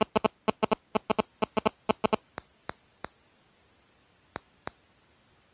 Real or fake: real